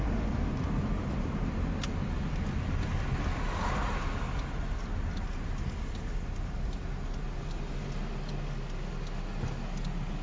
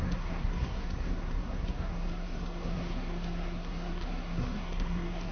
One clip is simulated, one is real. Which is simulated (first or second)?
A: second